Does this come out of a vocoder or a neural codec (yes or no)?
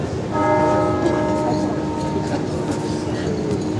no